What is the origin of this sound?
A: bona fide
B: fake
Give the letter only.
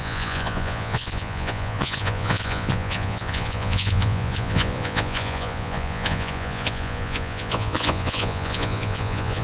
B